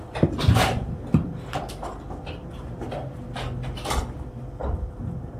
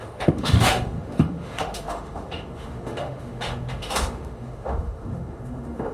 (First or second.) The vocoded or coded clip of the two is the second